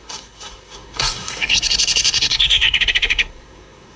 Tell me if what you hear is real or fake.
fake